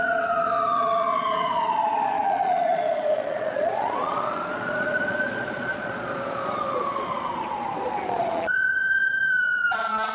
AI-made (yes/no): yes